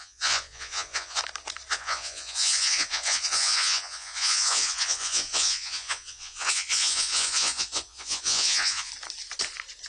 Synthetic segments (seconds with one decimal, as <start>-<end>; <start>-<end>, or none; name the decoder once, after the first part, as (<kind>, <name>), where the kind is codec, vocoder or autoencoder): 0.0-1.2 (vocoder, Vocos); 1.7-8.9